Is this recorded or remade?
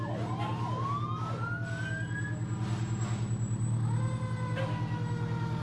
recorded